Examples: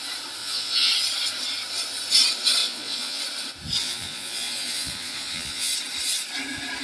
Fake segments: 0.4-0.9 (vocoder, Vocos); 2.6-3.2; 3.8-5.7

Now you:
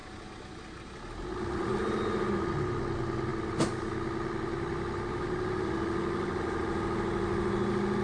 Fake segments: none

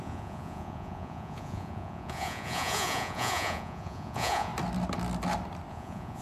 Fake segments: 0.0-4.5 (vocoder, Vocos); 5.7-6.2